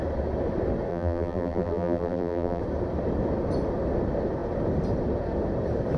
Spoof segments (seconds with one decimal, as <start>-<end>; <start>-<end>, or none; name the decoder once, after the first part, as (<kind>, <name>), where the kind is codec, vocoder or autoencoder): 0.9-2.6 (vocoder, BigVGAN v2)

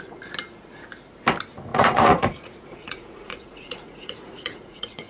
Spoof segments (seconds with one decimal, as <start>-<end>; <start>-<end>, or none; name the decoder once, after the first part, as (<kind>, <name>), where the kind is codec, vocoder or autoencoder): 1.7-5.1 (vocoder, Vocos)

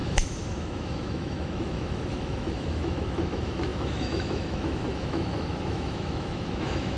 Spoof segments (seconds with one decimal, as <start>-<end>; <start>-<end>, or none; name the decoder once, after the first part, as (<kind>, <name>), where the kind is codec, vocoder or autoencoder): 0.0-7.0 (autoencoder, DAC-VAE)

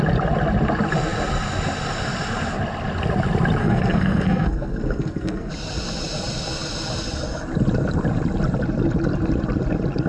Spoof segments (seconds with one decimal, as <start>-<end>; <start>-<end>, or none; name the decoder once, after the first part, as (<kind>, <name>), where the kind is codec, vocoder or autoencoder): 3.6-5.5 (codec, SNAC)

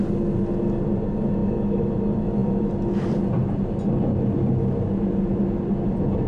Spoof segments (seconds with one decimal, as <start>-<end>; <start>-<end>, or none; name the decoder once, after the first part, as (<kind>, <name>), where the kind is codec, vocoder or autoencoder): 1.4-1.9 (autoencoder, DAC-VAE)

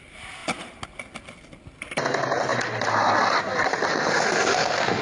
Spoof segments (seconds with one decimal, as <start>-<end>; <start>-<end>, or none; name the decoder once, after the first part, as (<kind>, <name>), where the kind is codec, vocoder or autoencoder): 3.9-5.0 (autoencoder, DAC-VAE)

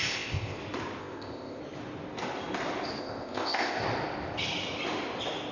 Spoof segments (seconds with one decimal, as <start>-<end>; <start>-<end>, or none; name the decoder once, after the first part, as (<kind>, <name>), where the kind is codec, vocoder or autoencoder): 0.0-0.6 (codec, ZipCodec); 1.0-1.6; 3.0-3.8